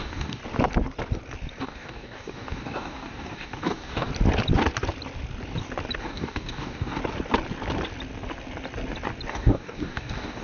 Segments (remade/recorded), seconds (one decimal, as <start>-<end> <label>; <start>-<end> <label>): 0.0-0.4 remade; 0.4-1.6 recorded; 1.6-4.1 remade; 4.1-6.0 recorded; 6.0-7.0 remade; 7.0-9.3 recorded; 9.3-10.4 remade